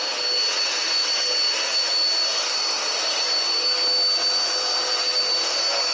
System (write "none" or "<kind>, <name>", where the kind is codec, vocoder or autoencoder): none